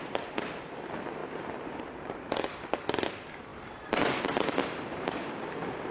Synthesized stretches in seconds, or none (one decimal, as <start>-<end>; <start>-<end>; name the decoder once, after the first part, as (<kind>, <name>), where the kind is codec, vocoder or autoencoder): none